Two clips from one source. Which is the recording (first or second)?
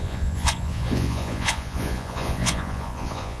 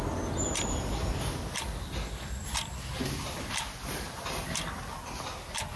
second